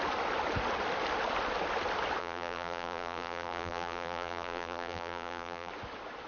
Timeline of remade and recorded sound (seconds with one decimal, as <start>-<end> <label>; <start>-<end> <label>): 0.0-2.2 recorded; 2.2-5.7 remade; 5.7-6.3 recorded